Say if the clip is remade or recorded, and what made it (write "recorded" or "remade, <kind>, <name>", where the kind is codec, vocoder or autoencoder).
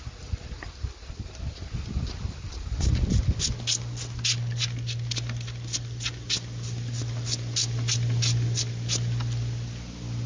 recorded